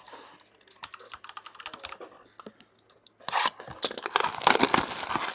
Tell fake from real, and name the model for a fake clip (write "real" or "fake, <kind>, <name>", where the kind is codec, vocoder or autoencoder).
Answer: real